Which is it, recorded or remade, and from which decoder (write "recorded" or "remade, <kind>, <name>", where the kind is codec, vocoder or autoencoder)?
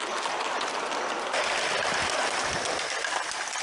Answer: recorded